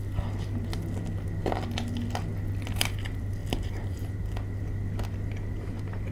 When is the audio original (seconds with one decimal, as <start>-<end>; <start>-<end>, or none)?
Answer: 0.0-3.4; 4.1-6.1